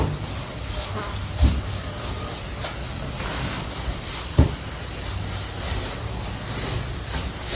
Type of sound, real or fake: real